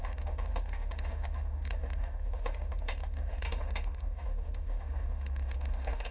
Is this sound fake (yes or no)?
yes